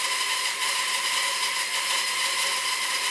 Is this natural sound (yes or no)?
yes